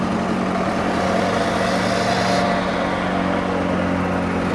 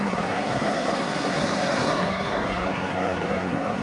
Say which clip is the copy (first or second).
second